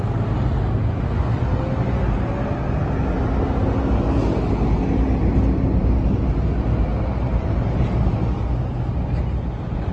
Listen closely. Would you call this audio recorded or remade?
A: recorded